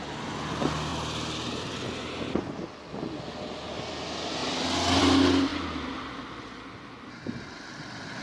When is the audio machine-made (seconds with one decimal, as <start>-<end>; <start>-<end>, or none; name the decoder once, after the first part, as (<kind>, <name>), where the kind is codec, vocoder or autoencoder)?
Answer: none